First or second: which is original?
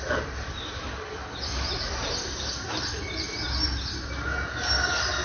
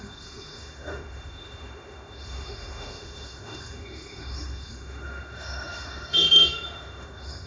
first